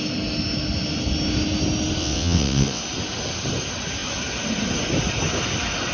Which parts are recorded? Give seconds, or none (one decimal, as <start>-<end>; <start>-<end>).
0.0-2.0; 2.8-5.9